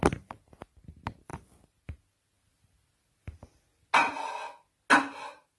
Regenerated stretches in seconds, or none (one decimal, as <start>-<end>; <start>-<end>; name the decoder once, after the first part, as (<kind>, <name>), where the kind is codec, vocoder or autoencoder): none